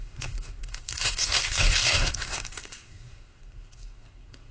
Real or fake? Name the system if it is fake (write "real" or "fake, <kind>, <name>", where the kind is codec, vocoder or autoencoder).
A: fake, codec, SNAC